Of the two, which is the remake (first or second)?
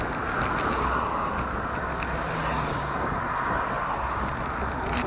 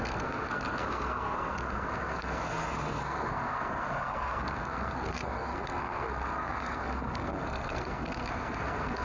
second